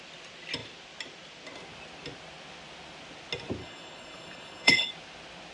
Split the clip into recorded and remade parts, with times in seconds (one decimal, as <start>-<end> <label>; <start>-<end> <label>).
0.0-3.6 recorded; 3.6-4.9 remade; 4.9-5.5 recorded